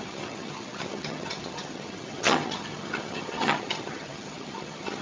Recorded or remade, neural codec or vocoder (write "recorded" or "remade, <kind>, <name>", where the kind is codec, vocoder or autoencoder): remade, vocoder, HiFi-GAN